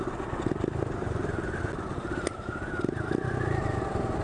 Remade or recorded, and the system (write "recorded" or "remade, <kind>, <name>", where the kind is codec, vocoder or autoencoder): recorded